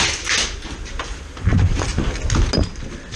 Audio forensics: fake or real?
real